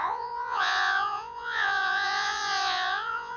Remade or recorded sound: remade